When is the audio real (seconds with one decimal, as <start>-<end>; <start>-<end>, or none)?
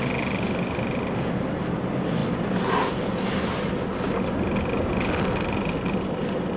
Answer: 0.0-6.6